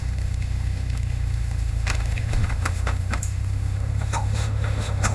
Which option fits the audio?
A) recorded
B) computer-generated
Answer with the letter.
B